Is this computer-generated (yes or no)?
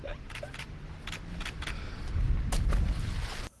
no